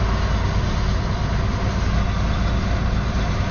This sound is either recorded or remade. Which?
recorded